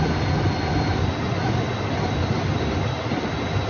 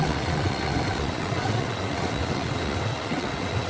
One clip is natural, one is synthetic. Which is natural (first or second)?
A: first